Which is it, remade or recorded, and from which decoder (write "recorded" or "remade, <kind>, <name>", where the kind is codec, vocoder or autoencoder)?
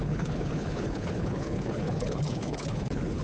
remade, codec, HILCodec